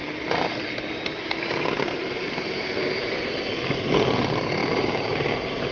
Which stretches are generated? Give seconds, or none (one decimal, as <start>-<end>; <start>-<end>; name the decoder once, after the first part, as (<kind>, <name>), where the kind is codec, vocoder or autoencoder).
0.0-3.4 (vocoder, BigVGAN v2); 4.6-5.3

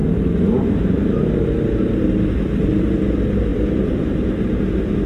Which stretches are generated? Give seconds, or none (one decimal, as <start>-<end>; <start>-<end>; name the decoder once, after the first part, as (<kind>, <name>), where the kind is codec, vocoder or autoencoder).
none

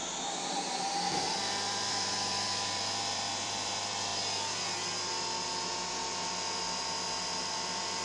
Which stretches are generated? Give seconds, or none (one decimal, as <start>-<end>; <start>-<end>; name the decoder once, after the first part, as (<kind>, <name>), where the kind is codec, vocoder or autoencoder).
0.0-4.1 (vocoder, BigVGAN v2); 7.4-8.0

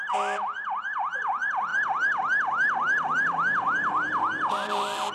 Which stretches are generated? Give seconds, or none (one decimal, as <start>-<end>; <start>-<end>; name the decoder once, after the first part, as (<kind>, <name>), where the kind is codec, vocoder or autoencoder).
1.7-5.1 (vocoder, BigVGAN v2)

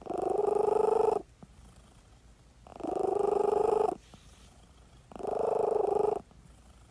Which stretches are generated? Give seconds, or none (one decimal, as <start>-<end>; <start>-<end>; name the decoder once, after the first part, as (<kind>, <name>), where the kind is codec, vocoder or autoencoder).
2.7-6.9 (vocoder, BigVGAN v2)

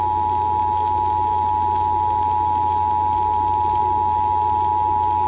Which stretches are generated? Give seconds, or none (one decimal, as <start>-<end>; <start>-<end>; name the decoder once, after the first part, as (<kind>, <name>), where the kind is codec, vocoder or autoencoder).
none

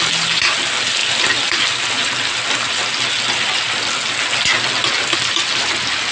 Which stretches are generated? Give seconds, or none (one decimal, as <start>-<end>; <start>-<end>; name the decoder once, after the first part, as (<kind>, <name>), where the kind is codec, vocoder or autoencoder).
none

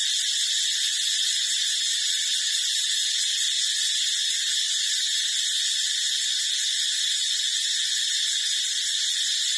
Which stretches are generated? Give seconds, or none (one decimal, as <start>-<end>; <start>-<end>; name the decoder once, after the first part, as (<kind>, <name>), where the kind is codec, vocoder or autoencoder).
none